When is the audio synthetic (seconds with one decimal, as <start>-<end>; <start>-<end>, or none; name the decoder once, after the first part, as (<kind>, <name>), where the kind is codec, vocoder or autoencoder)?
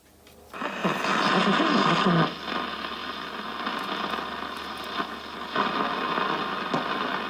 none